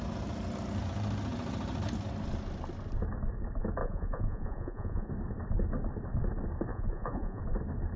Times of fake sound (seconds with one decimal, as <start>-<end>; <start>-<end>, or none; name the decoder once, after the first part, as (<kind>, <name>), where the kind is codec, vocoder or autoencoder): 3.8-5.1 (vocoder, Vocos); 6.7-7.4